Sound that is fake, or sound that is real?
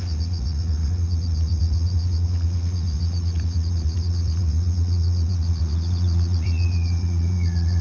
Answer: fake